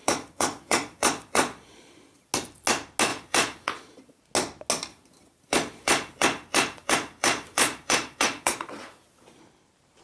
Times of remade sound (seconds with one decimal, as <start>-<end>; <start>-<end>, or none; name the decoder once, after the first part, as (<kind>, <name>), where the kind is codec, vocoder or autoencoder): 0.0-2.3 (vocoder, Vocos); 3.1-4.2; 4.9-9.4